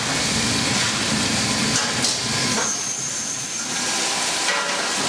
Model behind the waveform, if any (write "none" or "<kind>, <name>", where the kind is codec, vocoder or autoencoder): none